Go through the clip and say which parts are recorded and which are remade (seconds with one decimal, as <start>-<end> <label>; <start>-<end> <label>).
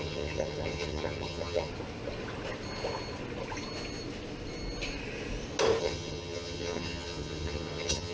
0.0-1.7 remade; 1.7-5.8 recorded; 5.8-8.1 remade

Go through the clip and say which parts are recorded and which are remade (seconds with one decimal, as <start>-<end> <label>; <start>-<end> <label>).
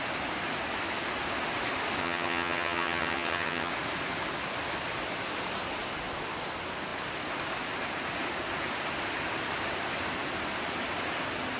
0.0-2.0 recorded; 2.0-3.7 remade; 3.7-11.6 recorded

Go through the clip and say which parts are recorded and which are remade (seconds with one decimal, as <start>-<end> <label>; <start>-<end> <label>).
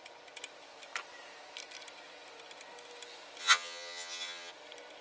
0.0-3.4 recorded; 3.4-4.5 remade; 4.5-5.0 recorded